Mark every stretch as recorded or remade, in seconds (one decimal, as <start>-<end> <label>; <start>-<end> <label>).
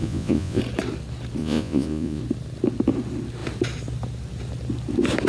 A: 0.0-0.6 remade; 0.6-1.4 recorded; 1.4-2.2 remade; 2.2-5.3 recorded